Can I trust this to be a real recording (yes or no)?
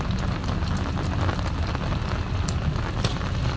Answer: yes